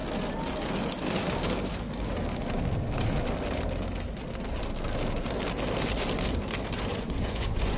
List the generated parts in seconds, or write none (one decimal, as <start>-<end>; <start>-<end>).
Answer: 6.9-7.8